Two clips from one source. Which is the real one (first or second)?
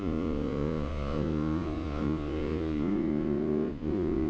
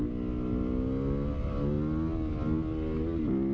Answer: second